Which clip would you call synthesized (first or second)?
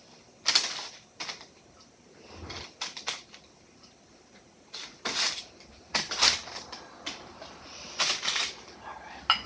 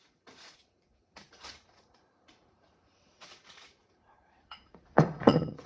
second